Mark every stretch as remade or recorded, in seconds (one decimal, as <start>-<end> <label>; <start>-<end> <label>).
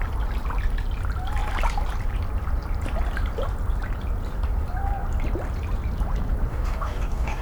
0.0-6.5 recorded; 6.5-7.4 remade